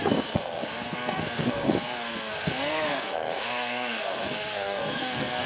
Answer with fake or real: fake